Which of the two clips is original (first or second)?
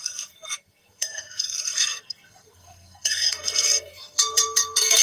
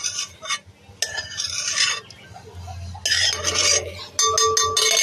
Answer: second